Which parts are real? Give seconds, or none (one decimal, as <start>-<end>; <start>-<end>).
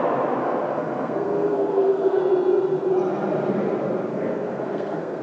0.0-0.4; 2.2-4.1